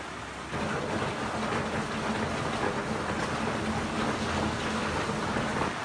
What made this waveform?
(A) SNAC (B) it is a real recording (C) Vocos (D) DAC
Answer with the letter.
B